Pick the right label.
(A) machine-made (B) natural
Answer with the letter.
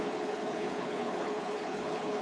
A